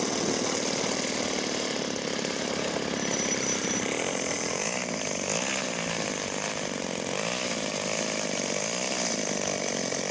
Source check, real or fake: real